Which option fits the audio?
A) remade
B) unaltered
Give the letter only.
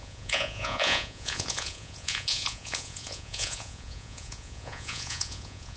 A